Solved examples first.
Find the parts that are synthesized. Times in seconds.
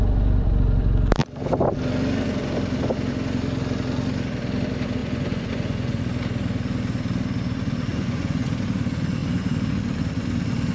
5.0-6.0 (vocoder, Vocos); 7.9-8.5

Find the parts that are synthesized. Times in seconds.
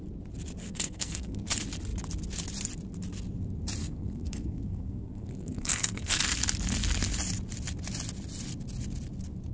0.6-1.5 (codec, SNAC); 3.8-6.2